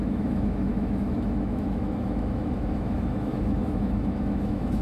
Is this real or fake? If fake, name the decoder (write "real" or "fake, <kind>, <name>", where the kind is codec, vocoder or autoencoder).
fake, autoencoder, DAC-VAE